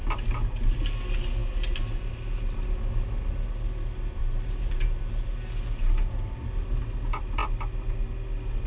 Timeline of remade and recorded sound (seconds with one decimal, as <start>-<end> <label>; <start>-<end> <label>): 0.0-0.4 recorded; 0.4-0.9 remade; 0.9-4.2 recorded; 4.2-4.7 remade; 4.7-8.7 recorded